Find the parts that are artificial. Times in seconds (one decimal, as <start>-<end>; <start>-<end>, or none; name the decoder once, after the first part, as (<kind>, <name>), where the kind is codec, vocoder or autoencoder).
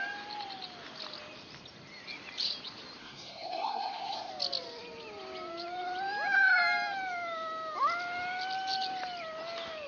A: 3.0-4.3 (codec, SNAC)